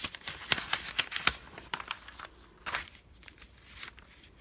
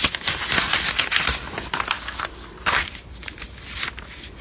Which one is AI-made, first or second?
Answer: first